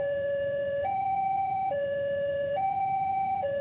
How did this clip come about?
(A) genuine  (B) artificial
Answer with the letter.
B